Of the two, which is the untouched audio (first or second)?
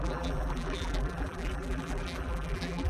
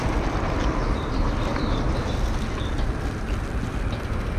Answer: second